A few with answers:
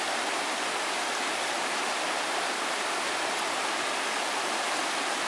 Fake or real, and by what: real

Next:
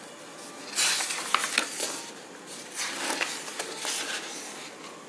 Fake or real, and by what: real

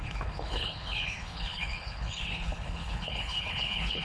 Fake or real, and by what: fake, codec, HILCodec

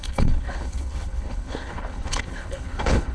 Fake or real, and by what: fake, codec, HILCodec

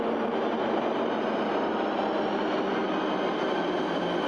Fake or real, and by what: real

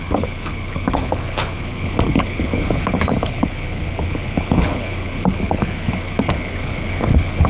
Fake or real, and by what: fake, codec, HILCodec